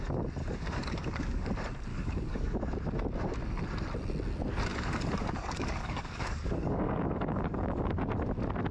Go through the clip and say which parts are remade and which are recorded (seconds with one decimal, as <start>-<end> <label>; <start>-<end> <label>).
0.0-0.4 recorded; 0.4-1.5 remade; 1.5-1.9 recorded; 1.9-2.6 remade; 2.6-4.7 recorded; 4.7-8.0 remade; 8.0-8.7 recorded